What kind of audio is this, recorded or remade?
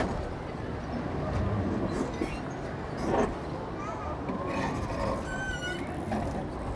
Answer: recorded